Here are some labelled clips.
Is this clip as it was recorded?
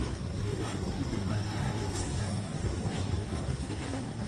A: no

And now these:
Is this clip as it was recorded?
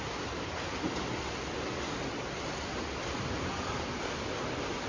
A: yes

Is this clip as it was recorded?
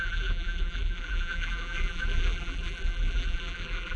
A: no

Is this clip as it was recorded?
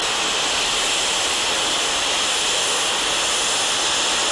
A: yes